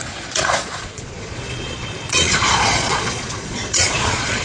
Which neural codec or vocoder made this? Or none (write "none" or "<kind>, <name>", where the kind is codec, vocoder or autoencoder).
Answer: vocoder, Vocos